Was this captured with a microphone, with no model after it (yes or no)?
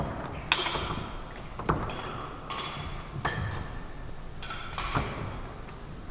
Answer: yes